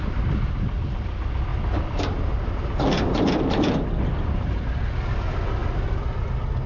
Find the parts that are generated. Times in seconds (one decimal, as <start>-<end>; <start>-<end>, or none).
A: none